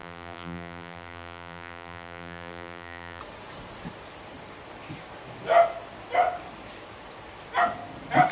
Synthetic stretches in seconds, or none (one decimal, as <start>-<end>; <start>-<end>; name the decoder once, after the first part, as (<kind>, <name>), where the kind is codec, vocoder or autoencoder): 0.0-3.2 (vocoder, BigVGAN v2)